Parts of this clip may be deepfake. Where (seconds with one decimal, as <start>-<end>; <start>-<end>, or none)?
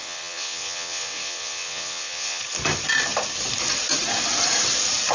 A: 0.0-2.4